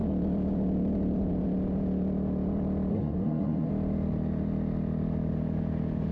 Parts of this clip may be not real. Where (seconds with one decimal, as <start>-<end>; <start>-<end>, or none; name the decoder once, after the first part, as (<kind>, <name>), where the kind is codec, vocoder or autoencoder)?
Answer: 2.9-3.7 (codec, SNAC)